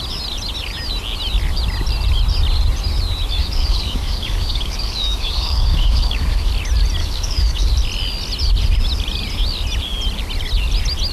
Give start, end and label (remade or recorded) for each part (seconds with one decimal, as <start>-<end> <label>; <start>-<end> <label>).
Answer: 0.0-3.4 recorded; 3.4-6.5 remade; 6.5-7.0 recorded; 7.0-7.7 remade; 7.7-11.1 recorded